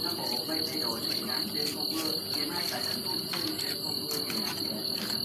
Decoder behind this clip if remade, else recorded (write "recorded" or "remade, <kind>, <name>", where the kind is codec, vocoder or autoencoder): recorded